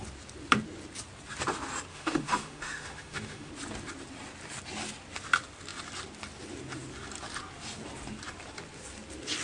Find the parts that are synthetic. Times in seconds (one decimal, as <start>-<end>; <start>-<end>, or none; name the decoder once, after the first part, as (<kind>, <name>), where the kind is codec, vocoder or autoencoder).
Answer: 1.9-3.5 (autoencoder, DAC-VAE)